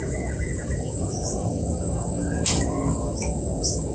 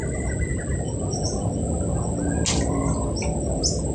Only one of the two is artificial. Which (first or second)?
first